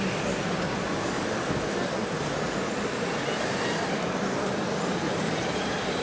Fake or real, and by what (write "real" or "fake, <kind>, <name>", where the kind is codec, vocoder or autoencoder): fake, vocoder, BigVGAN v2